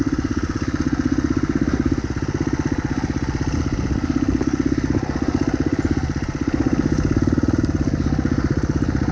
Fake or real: real